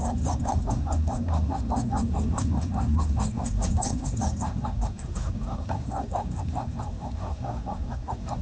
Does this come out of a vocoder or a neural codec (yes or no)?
yes